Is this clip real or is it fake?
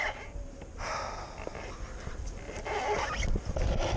real